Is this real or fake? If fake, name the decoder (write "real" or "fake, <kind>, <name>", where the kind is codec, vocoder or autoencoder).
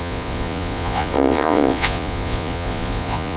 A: fake, vocoder, Vocos